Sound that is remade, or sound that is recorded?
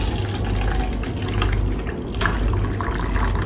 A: recorded